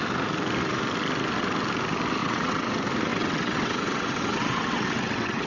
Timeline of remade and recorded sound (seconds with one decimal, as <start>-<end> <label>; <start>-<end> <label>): 0.0-2.2 recorded; 2.2-2.7 remade; 2.7-3.1 recorded; 3.1-5.5 remade

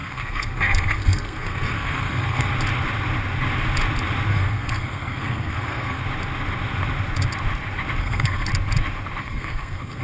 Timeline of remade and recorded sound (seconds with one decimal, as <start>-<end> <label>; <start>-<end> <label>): 0.0-2.5 remade; 2.5-4.3 recorded; 4.3-6.0 remade; 6.0-8.0 recorded; 8.0-8.5 remade; 8.5-9.2 recorded; 9.2-10.0 remade

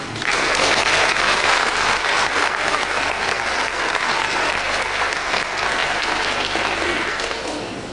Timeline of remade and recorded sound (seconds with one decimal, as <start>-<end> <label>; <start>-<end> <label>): 0.0-7.9 remade

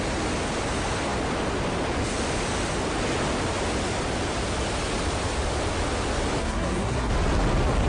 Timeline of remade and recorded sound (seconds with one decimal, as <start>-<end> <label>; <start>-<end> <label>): 0.0-6.4 recorded; 6.4-7.1 remade; 7.1-7.9 recorded

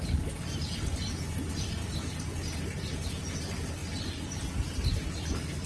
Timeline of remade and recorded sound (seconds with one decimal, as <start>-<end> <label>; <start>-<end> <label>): 0.0-5.7 recorded

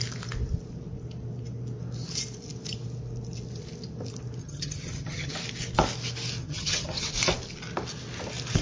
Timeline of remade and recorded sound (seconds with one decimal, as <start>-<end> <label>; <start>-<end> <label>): 0.0-4.4 recorded; 4.4-5.3 remade; 5.3-6.4 recorded; 6.4-7.1 remade; 7.1-8.6 recorded